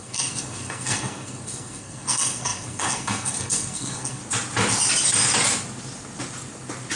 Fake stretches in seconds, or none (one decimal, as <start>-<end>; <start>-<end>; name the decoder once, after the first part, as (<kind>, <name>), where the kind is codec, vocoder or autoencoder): 0.0-4.2 (codec, SNAC)